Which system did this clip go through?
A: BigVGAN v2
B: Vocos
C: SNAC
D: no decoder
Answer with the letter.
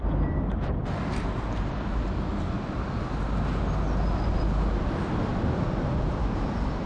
D